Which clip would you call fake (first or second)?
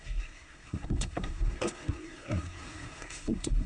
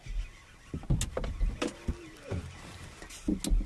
first